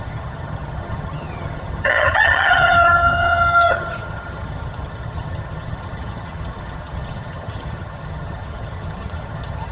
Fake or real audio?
fake